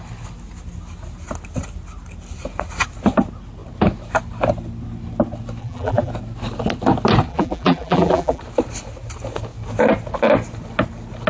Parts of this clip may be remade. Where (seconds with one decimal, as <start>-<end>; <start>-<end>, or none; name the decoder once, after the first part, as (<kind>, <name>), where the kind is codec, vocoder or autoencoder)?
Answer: 5.6-6.1 (vocoder, BigVGAN v2); 7.3-8.4